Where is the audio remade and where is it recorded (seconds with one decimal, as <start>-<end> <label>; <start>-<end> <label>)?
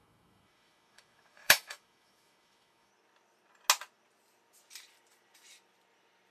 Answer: 0.0-2.9 remade; 2.9-6.3 recorded